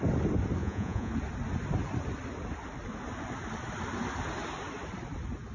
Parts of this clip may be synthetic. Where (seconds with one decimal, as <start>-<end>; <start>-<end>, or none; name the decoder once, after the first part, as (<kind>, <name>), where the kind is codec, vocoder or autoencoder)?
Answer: 0.6-1.1 (vocoder, Vocos)